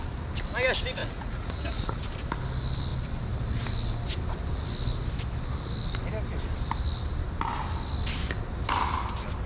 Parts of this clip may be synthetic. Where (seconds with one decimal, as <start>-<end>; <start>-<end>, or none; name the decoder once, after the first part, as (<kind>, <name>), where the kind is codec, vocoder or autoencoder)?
1.0-2.0 (vocoder, Vocos)